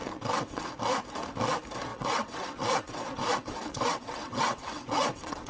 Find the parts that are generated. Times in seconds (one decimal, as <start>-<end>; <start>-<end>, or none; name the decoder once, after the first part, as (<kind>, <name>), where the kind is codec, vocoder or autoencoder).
0.0-0.7 (vocoder, WaveNeXt); 1.9-5.5